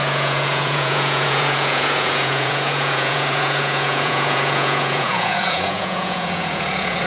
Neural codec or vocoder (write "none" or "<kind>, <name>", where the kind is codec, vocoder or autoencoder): vocoder, Vocos